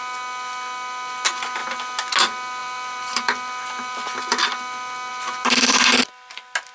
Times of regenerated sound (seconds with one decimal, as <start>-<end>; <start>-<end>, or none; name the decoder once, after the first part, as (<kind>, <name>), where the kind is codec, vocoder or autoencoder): 2.6-4.2 (vocoder, BigVGAN v2); 5.1-5.8